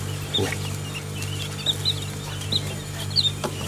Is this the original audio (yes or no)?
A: yes